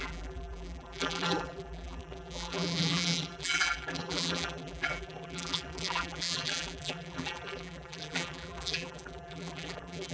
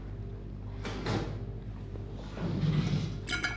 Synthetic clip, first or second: first